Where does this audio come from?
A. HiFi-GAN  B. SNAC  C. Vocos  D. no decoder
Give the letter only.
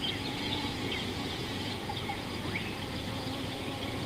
C